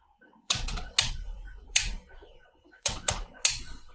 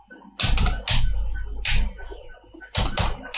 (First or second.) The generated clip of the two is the first